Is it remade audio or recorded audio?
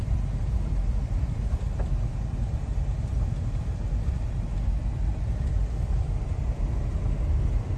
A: recorded